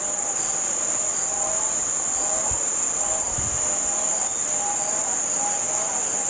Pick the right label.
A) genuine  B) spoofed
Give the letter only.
A